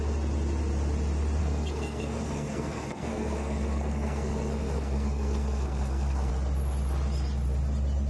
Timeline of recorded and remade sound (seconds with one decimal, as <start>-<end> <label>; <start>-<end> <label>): 0.0-1.4 recorded; 1.4-6.3 remade; 6.3-8.1 recorded